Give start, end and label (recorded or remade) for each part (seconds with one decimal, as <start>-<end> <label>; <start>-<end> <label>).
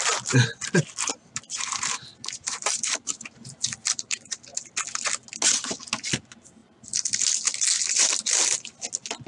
0.0-2.1 recorded; 2.1-3.1 remade; 3.1-3.8 recorded; 3.8-4.4 remade; 4.4-6.6 recorded; 6.6-7.2 remade; 7.2-9.3 recorded